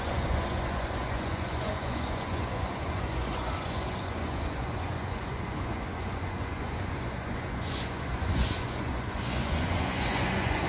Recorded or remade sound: remade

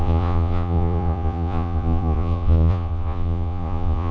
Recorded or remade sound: remade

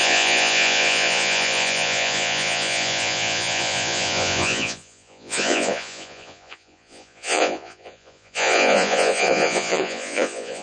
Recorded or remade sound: remade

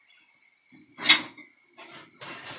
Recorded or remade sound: recorded